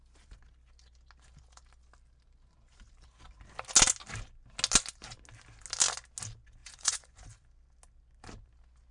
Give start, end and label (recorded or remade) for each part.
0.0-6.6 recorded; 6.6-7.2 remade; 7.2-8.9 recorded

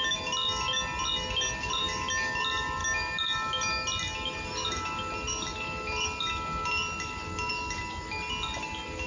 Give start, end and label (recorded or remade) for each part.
0.0-9.1 recorded